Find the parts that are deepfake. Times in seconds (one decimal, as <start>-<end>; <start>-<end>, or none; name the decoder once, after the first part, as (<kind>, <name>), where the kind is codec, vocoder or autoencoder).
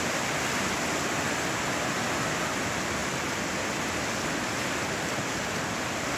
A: none